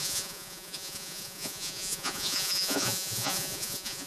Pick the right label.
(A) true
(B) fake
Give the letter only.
B